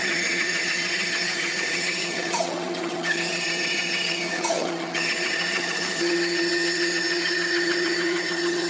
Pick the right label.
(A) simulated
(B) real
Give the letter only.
A